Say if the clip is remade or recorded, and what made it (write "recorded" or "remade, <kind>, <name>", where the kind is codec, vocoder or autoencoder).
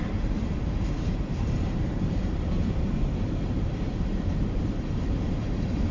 remade, vocoder, BigVGAN v2